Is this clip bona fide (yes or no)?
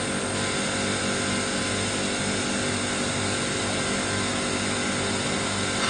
yes